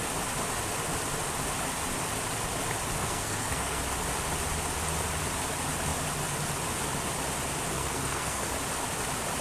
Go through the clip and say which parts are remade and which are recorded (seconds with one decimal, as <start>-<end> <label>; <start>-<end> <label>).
0.0-3.0 recorded; 3.0-3.8 remade; 3.8-7.7 recorded; 7.7-8.5 remade; 8.5-9.4 recorded